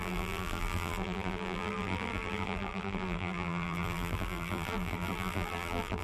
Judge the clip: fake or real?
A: fake